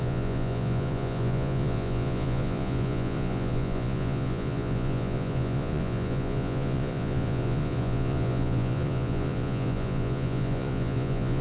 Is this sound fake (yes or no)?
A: yes